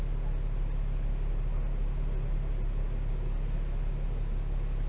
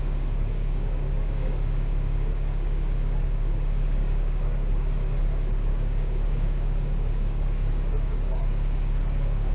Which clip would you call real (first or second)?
first